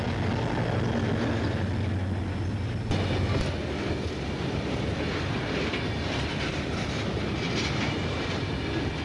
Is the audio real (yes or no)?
yes